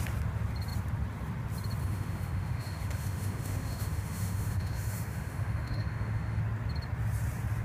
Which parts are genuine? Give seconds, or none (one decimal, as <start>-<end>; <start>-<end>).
0.0-1.8; 6.4-7.6